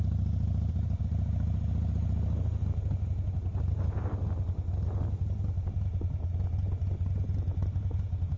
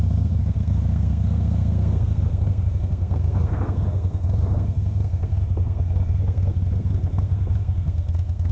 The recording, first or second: first